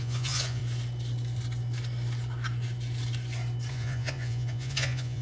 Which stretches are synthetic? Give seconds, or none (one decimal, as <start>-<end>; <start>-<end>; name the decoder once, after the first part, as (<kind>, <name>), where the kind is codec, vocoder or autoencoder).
0.0-0.6 (vocoder, Vocos); 3.7-5.2